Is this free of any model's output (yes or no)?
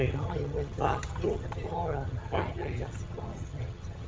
no